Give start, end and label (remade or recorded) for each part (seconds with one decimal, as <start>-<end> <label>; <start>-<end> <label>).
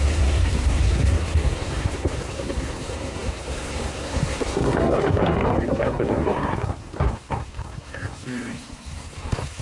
0.0-9.6 remade